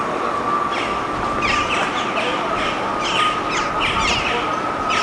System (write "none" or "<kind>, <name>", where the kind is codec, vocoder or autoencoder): none